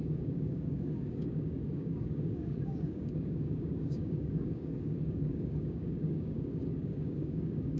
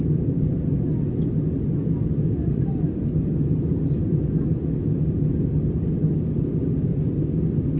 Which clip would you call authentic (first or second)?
second